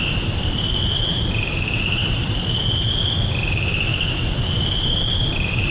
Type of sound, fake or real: real